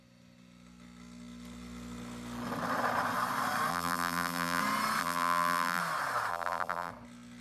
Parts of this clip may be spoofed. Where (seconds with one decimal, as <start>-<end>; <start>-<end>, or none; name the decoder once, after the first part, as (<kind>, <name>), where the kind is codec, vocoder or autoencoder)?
3.7-4.6 (vocoder, BigVGAN v2); 5.0-5.8; 6.3-6.9